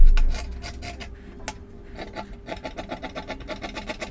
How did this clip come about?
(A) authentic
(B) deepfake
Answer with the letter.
A